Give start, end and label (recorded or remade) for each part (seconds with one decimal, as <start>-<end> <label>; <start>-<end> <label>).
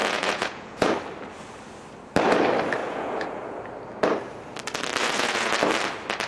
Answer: 0.0-0.9 remade; 0.9-2.8 recorded; 2.8-3.6 remade; 3.6-5.0 recorded; 5.0-5.5 remade; 5.5-6.3 recorded